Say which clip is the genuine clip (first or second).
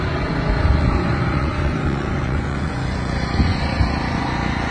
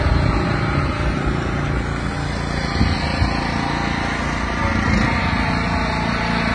second